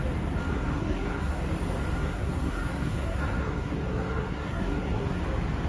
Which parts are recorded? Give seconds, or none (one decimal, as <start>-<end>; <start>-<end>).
0.0-0.5; 1.4-1.9; 5.2-5.7